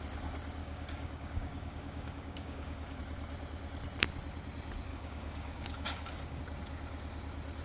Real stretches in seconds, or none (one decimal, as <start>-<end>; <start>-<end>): 0.0-0.6; 3.0-4.9; 6.4-7.6